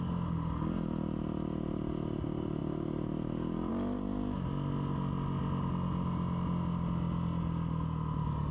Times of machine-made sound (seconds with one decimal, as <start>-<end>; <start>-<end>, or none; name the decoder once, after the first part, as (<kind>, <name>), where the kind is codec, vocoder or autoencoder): none